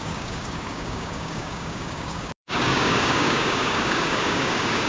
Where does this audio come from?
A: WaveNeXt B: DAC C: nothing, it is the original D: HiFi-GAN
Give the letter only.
B